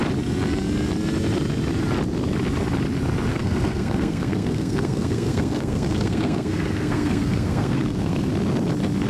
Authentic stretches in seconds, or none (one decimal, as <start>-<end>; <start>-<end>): 0.0-3.3; 8.3-9.1